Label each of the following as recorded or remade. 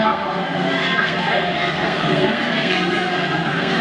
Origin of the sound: remade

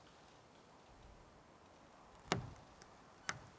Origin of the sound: recorded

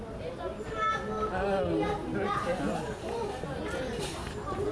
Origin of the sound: recorded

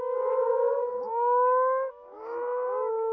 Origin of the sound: remade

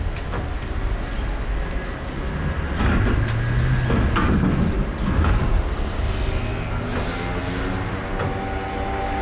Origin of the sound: recorded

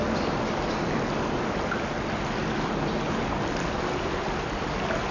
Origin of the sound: recorded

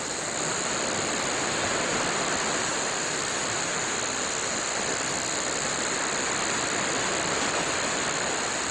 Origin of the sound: recorded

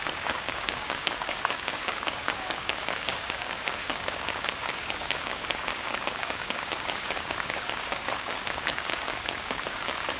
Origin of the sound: remade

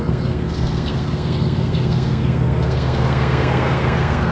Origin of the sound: remade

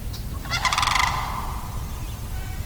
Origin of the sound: remade